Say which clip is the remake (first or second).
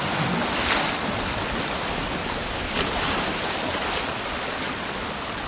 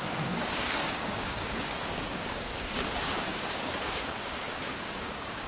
second